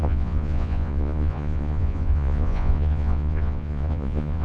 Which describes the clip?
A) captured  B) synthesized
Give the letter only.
B